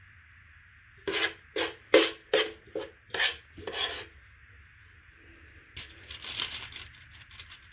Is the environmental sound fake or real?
real